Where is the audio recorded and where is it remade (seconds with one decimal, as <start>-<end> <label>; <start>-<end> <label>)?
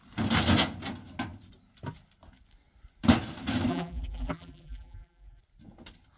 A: 0.0-3.7 recorded; 3.7-5.4 remade; 5.4-6.2 recorded